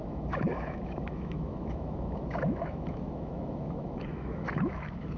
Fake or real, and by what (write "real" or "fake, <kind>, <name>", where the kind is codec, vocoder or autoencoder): fake, autoencoder, DAC-VAE